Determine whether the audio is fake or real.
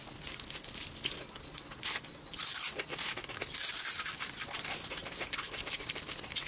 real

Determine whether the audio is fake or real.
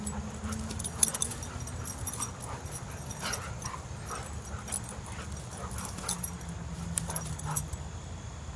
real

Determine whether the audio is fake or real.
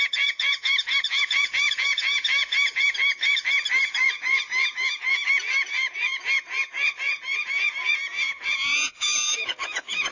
fake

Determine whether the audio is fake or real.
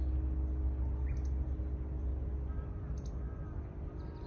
real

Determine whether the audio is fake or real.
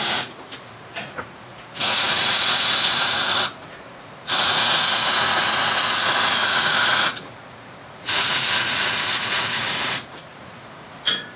fake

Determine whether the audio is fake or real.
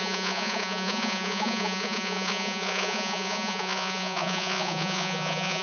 fake